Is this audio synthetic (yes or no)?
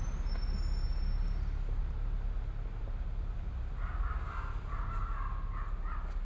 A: no